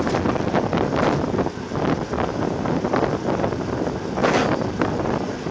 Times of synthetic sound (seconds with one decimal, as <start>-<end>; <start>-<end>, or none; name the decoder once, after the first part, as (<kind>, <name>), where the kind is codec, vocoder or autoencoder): none